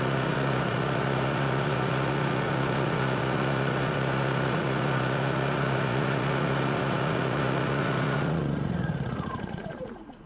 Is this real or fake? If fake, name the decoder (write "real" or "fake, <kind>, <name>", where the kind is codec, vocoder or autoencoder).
fake, vocoder, Vocos